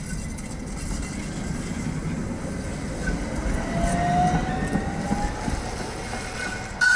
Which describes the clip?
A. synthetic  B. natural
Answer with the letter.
B